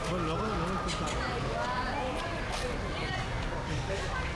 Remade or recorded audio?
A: recorded